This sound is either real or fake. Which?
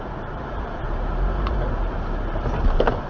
fake